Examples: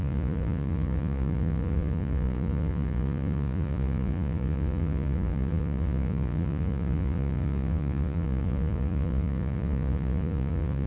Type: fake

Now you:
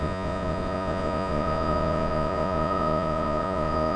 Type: fake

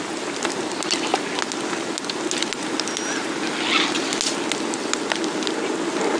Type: real